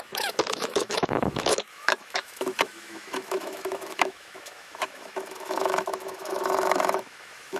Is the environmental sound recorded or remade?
remade